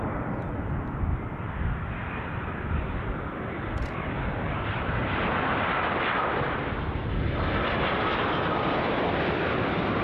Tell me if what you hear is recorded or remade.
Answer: remade